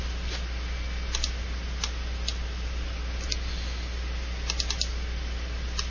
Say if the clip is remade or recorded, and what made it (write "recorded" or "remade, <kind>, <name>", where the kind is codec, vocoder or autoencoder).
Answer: recorded